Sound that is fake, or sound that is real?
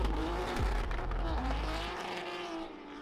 fake